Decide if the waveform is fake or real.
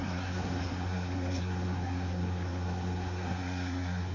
fake